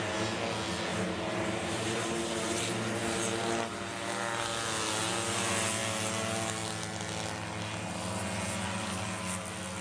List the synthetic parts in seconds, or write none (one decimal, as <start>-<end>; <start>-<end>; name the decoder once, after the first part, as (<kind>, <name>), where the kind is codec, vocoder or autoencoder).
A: 0.9-2.6 (vocoder, BigVGAN v2)